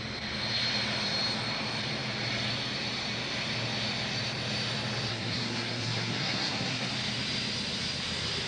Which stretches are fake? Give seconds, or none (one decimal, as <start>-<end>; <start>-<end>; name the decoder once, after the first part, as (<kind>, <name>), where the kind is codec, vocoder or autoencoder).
5.1-6.9 (codec, SNAC)